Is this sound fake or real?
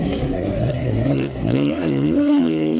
fake